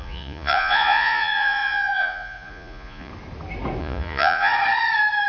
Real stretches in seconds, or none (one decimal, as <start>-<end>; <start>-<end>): 3.1-3.8; 4.5-5.3